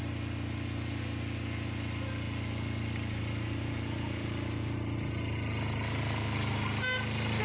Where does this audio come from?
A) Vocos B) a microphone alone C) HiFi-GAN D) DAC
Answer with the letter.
B